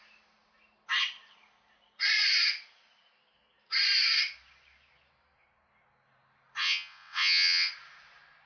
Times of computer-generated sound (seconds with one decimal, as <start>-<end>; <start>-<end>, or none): 6.6-7.7